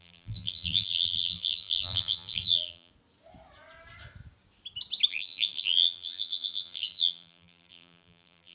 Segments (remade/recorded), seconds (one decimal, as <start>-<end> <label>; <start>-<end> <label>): 0.0-2.9 remade; 2.9-5.1 recorded; 5.1-8.5 remade

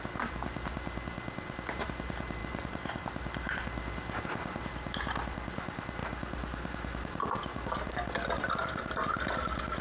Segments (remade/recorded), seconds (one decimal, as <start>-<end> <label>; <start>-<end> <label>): 0.0-6.0 remade; 6.0-8.5 recorded; 8.5-9.8 remade

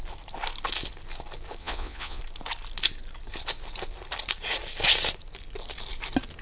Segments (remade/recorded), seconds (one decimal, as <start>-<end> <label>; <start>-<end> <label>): 0.0-1.6 recorded; 1.6-2.2 remade; 2.2-6.4 recorded

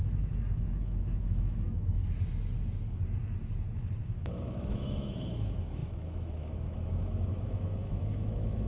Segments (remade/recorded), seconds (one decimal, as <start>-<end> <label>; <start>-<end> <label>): 0.0-2.0 remade; 2.0-4.0 recorded; 4.0-8.7 remade

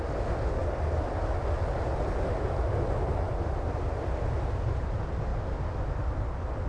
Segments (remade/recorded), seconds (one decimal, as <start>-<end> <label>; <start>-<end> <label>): 0.0-6.7 recorded